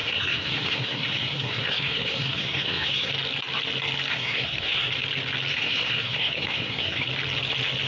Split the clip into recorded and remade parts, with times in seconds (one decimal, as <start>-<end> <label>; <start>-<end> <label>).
0.0-3.1 remade; 3.1-4.1 recorded; 4.1-4.9 remade; 4.9-5.5 recorded; 5.5-7.1 remade; 7.1-7.9 recorded